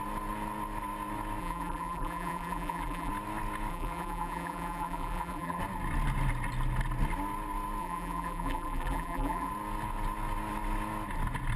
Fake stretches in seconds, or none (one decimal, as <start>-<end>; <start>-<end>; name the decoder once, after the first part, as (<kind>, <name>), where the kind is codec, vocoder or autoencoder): 1.4-3.1 (vocoder, BigVGAN v2); 3.7-5.6; 7.8-9.5

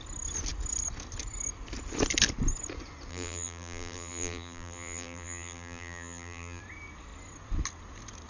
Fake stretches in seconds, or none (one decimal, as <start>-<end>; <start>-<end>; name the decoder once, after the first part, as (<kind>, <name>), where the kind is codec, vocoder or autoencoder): 3.1-6.6 (vocoder, BigVGAN v2)

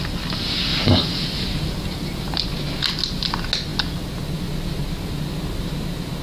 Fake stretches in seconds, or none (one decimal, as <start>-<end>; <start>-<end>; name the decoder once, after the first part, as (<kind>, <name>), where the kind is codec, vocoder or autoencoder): 0.7-2.4 (vocoder, BigVGAN v2)

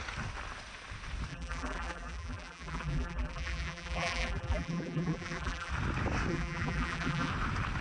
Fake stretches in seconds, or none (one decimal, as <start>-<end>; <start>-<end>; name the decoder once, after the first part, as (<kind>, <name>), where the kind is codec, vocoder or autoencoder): 1.3-5.7 (vocoder, BigVGAN v2); 6.3-7.3

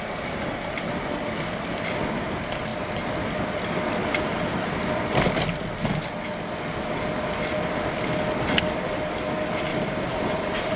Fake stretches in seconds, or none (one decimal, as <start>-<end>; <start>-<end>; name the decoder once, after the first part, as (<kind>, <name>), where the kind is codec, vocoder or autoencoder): 4.0-5.0 (vocoder, BigVGAN v2); 9.7-10.8

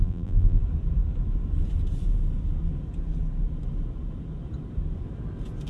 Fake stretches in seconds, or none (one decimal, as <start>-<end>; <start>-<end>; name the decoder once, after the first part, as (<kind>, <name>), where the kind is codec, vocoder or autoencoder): 0.0-0.6 (vocoder, BigVGAN v2)

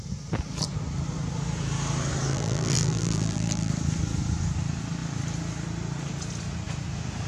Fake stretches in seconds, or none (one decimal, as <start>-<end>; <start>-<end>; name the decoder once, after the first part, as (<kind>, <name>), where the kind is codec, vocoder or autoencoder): 2.3-3.7 (vocoder, BigVGAN v2)

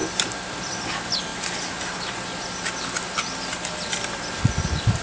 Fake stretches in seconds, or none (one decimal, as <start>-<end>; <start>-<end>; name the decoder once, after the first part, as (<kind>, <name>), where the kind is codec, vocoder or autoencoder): 0.0-0.7 (vocoder, BigVGAN v2); 1.3-4.3